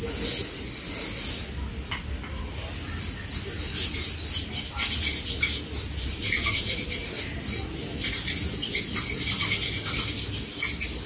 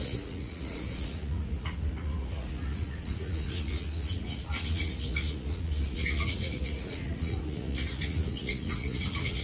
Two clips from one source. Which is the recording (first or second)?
first